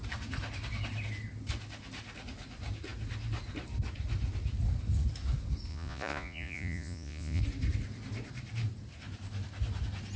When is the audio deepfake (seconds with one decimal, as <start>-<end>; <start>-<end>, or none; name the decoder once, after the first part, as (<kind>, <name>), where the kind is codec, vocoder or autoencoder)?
5.7-7.4 (vocoder, Vocos)